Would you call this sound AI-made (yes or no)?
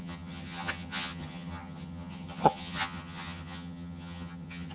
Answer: yes